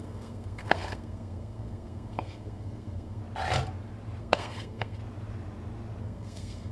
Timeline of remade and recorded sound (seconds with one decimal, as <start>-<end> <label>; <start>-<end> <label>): 0.0-3.2 remade; 3.2-4.2 recorded; 4.2-5.0 remade; 5.0-6.0 recorded; 6.0-6.7 remade

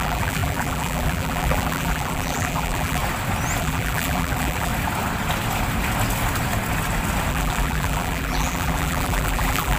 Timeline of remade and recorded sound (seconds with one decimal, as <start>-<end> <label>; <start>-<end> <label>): 0.0-3.0 remade; 3.0-3.6 recorded; 3.6-4.7 remade; 4.7-7.3 recorded; 7.3-9.8 remade

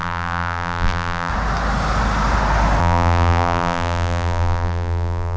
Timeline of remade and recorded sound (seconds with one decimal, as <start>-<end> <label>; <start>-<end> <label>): 0.0-1.3 remade; 1.3-2.8 recorded; 2.8-5.4 remade

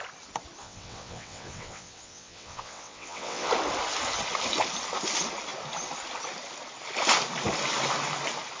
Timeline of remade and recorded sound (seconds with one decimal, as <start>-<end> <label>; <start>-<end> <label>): 0.0-0.6 recorded; 0.6-3.5 remade; 3.5-8.6 recorded

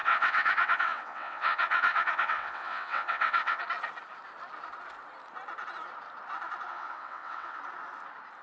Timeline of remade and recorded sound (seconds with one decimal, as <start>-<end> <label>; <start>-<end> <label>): 0.0-3.6 remade; 3.6-6.7 recorded; 6.7-7.6 remade; 7.6-8.4 recorded

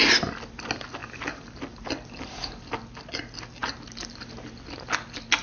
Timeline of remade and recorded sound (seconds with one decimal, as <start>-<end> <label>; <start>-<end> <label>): 0.0-5.4 recorded

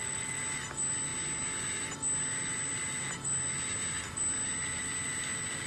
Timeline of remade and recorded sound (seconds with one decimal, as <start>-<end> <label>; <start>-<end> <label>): 0.0-5.7 recorded